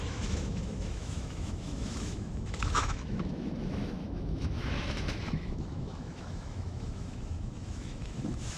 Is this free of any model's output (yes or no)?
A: no